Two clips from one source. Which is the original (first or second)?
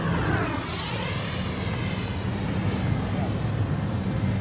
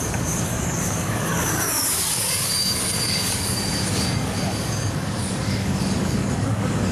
first